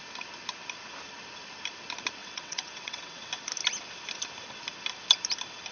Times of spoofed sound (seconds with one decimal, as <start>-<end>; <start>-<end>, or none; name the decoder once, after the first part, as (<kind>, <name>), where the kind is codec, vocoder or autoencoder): 2.2-3.3 (vocoder, WaveNeXt)